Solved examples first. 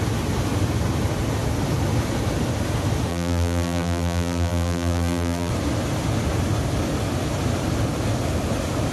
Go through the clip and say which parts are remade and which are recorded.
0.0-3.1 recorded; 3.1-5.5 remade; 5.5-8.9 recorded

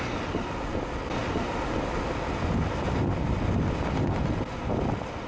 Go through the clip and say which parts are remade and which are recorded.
0.0-5.3 recorded

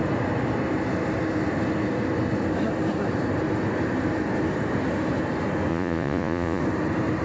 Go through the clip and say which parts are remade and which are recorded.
0.0-5.7 recorded; 5.7-6.6 remade; 6.6-7.2 recorded

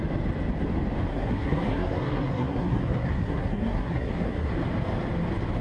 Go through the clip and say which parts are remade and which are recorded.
0.0-1.1 recorded; 1.1-4.5 remade; 4.5-5.6 recorded

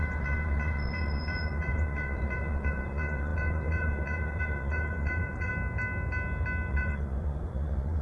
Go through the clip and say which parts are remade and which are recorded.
0.0-5.5 remade; 5.5-6.7 recorded; 6.7-8.0 remade

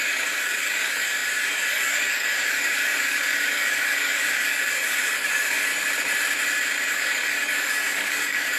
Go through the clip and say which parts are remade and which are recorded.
0.0-5.7 remade; 5.7-6.9 recorded; 6.9-8.6 remade